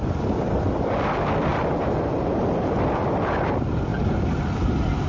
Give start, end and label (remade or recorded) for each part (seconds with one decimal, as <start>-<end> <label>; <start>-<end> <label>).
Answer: 0.0-1.5 recorded; 1.5-2.9 remade; 2.9-3.9 recorded; 3.9-5.1 remade